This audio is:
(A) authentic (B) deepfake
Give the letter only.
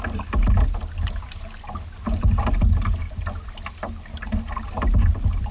A